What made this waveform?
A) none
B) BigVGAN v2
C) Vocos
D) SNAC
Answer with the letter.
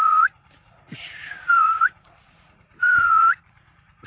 C